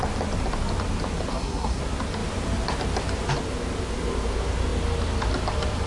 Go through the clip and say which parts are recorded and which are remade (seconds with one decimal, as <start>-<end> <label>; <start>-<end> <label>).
0.0-1.3 recorded; 1.3-1.8 remade; 1.8-5.9 recorded